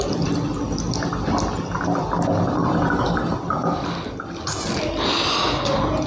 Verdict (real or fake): real